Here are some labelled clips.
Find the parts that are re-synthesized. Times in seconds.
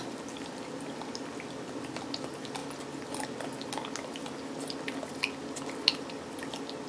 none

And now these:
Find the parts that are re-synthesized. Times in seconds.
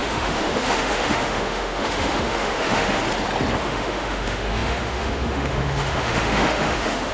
0.0-3.0 (autoencoder, DAC-VAE); 3.6-7.1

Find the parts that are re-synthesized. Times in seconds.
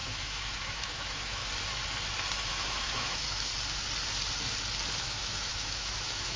0.0-1.4 (autoencoder, DAC-VAE); 2.5-3.5; 5.0-6.4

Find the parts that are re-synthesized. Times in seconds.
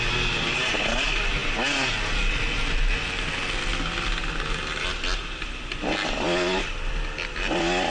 none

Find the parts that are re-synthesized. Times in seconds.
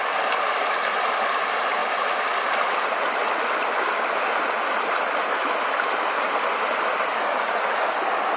none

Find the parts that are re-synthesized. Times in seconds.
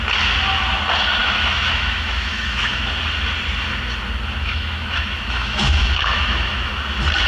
1.2-2.8 (autoencoder, DAC-VAE); 4.4-6.7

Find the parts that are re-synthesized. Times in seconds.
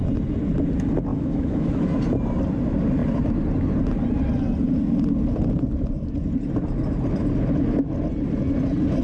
1.1-1.7 (autoencoder, DAC-VAE)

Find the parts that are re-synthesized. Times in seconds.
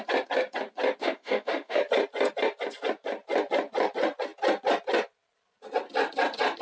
1.0-1.8 (autoencoder, DAC-VAE)